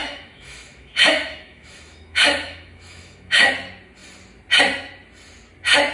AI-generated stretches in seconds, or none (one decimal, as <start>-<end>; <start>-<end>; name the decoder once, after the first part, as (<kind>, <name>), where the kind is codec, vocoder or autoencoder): 0.0-3.5 (autoencoder, DAC-VAE)